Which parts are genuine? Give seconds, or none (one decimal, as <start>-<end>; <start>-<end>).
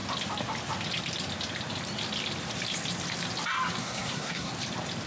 0.0-3.8; 4.5-5.1